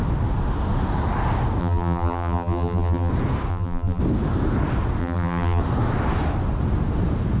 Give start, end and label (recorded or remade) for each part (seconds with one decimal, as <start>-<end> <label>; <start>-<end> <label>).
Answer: 0.0-1.6 recorded; 1.6-3.1 remade; 3.1-3.5 recorded; 3.5-4.0 remade; 4.0-5.0 recorded; 5.0-5.6 remade; 5.6-7.4 recorded